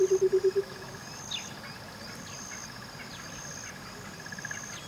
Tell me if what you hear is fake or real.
real